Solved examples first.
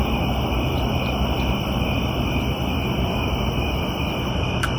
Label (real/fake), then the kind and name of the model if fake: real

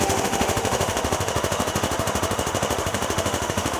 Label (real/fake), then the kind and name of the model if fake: fake, autoencoder, DAC-VAE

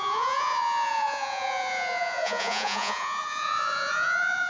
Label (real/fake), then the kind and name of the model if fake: fake, vocoder, Vocos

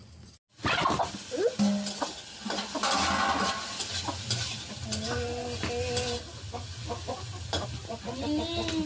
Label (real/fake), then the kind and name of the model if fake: real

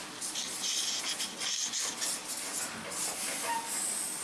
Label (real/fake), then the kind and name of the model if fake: real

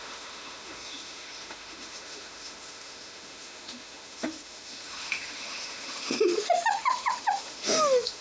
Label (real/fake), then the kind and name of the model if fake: fake, autoencoder, DAC-VAE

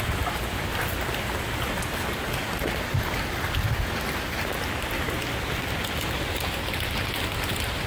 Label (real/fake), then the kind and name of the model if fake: fake, vocoder, BigVGAN v2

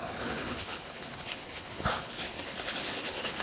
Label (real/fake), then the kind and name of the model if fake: fake, codec, HILCodec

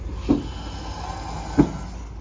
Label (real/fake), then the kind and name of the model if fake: real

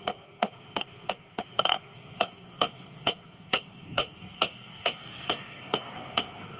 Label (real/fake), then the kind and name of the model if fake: fake, codec, SNAC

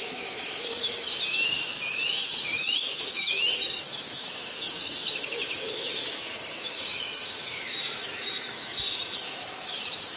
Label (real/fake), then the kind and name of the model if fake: fake, autoencoder, DAC-VAE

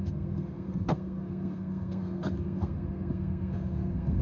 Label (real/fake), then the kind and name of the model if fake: fake, codec, SNAC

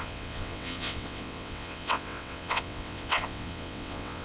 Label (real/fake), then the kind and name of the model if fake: fake, vocoder, WaveNeXt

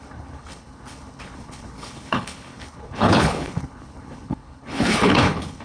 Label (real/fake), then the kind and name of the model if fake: fake, codec, HILCodec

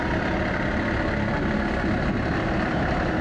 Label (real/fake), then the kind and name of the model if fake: real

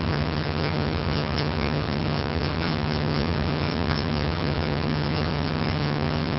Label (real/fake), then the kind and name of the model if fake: fake, vocoder, HiFi-GAN